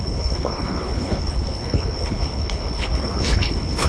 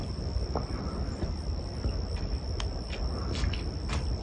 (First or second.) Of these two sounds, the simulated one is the first